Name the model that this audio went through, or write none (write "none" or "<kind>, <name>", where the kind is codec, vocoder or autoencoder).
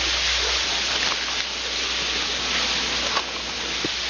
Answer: none